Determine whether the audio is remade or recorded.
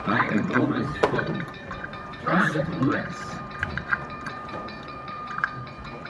remade